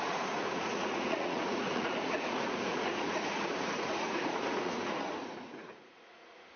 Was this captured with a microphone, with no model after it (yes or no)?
no